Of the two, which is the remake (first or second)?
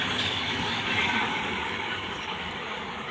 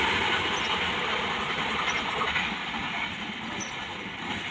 first